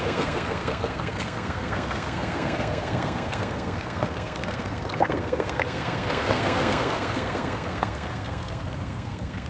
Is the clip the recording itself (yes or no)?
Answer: no